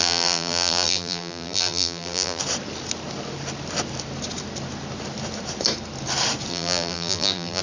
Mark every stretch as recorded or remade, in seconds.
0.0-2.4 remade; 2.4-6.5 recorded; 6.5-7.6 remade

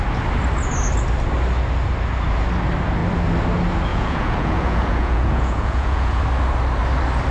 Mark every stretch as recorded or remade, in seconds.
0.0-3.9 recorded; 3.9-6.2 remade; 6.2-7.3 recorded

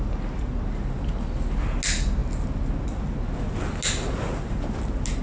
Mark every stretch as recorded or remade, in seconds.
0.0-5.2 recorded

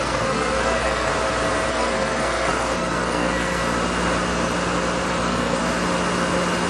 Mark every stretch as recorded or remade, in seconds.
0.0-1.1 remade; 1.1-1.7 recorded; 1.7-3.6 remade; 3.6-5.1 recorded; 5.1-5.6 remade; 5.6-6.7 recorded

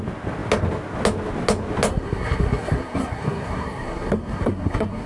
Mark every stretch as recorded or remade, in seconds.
0.0-1.9 recorded; 1.9-5.1 remade

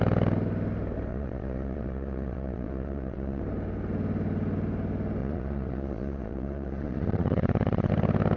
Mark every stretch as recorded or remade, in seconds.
0.0-1.1 recorded; 1.1-3.4 remade; 3.4-5.2 recorded; 5.2-7.9 remade; 7.9-8.4 recorded